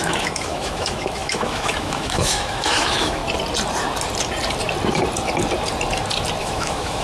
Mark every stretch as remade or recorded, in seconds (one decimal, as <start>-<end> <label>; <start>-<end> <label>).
0.0-3.2 remade; 3.2-6.4 recorded; 6.4-7.0 remade